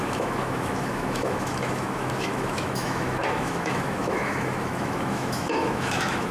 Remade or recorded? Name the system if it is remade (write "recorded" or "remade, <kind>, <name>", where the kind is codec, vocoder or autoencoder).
remade, autoencoder, DAC-VAE